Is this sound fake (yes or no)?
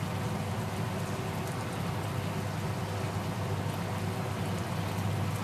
no